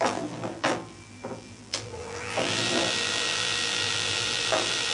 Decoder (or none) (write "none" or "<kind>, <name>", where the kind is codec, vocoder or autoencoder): vocoder, BigVGAN v2